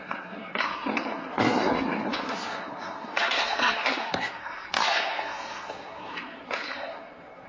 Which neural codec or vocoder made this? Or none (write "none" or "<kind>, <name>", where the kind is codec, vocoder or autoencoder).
codec, SNAC